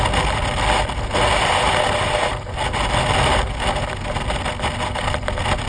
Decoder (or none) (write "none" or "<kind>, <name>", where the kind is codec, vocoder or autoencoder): none